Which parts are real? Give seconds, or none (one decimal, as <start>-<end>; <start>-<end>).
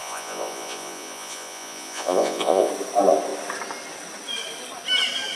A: 2.7-5.3